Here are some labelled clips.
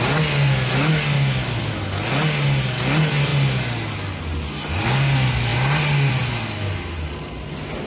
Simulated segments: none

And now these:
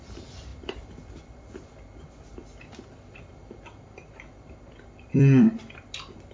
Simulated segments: 0.0-6.3 (vocoder, BigVGAN v2)

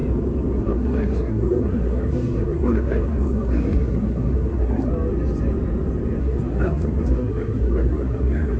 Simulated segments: 0.6-4.9 (codec, SNAC); 6.2-8.6

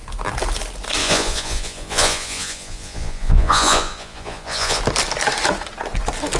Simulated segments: 1.0-4.8 (vocoder, Vocos)

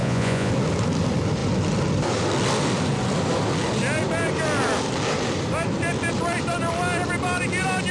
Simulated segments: 0.0-0.5 (vocoder, Vocos)

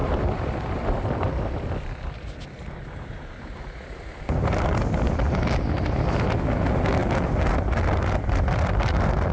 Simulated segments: 0.0-5.1 (vocoder, BigVGAN v2)

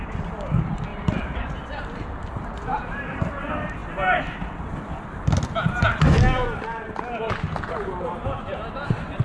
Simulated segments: 0.9-3.2 (vocoder, BigVGAN v2)

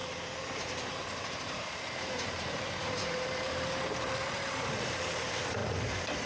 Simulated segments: 0.0-6.3 (vocoder, BigVGAN v2)